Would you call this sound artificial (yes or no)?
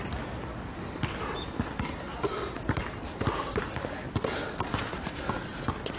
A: no